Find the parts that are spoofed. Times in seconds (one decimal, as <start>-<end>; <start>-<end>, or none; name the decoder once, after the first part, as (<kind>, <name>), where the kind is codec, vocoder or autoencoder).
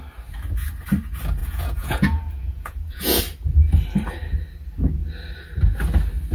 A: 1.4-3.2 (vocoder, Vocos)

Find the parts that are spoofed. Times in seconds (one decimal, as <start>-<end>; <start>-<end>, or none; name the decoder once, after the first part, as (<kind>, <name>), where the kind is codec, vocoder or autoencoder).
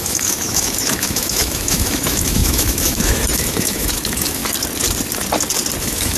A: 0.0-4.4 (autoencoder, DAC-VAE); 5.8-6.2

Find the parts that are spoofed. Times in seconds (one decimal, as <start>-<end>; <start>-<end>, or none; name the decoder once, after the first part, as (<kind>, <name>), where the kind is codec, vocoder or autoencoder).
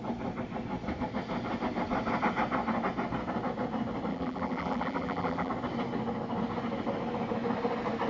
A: 4.1-5.5 (vocoder, BigVGAN v2)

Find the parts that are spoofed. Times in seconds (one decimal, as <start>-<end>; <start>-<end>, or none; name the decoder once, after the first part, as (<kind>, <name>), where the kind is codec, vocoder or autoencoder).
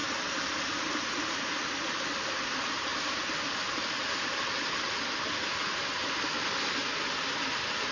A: none